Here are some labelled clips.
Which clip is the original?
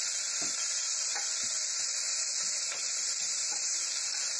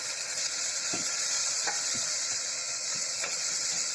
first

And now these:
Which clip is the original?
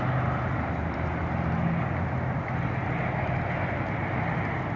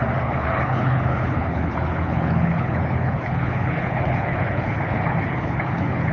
first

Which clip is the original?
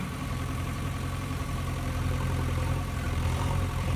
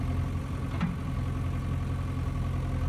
second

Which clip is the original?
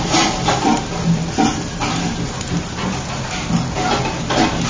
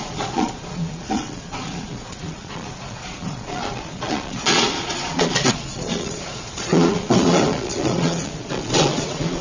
first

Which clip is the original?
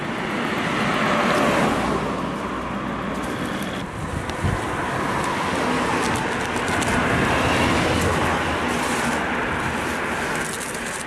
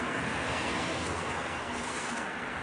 first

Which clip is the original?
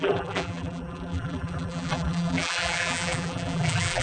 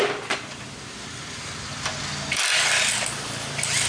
second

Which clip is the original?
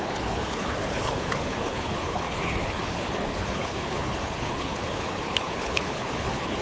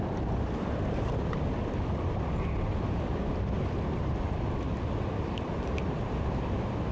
second